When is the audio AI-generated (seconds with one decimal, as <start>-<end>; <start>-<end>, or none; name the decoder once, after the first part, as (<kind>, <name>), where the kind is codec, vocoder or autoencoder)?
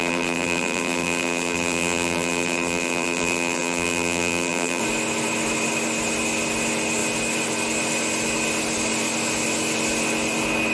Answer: 0.0-4.8 (vocoder, BigVGAN v2)